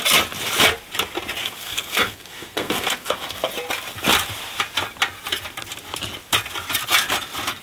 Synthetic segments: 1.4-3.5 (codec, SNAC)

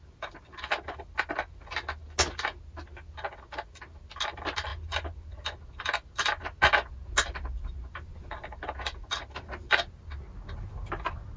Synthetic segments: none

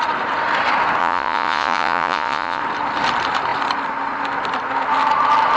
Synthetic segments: 1.0-2.6 (vocoder, Vocos)

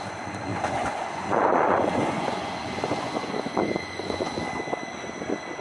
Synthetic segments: 0.0-4.4 (vocoder, Vocos)